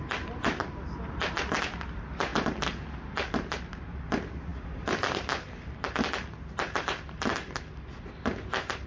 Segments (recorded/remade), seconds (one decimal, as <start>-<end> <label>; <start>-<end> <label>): 0.0-8.9 recorded